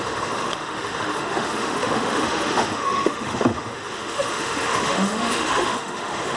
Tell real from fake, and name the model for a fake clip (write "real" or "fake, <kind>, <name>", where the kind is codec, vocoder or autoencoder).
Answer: fake, autoencoder, DAC-VAE